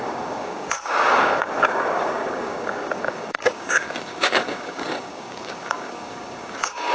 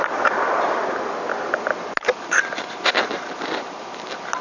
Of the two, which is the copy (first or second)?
first